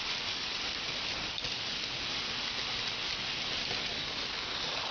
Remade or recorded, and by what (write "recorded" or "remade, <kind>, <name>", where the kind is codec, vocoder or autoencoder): recorded